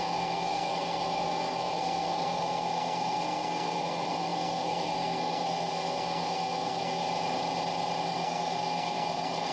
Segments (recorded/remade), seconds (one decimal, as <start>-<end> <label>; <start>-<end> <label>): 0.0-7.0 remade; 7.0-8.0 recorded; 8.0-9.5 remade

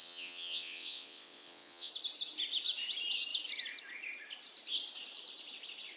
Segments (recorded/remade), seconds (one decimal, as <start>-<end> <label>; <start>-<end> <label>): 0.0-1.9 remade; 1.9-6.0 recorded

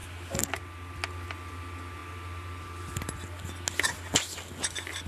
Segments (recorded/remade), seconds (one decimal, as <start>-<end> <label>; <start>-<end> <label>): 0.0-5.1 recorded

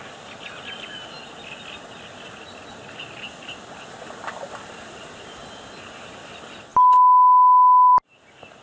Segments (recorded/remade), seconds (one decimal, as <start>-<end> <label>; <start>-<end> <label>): 0.0-8.6 recorded

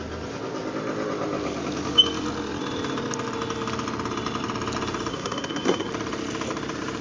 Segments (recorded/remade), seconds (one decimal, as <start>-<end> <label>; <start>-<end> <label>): 0.0-5.1 recorded; 5.1-5.9 remade; 5.9-7.0 recorded

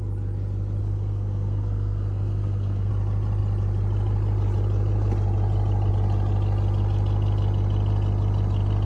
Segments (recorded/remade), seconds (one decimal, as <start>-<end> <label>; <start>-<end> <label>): 0.0-0.8 recorded; 0.8-2.9 remade; 2.9-8.9 recorded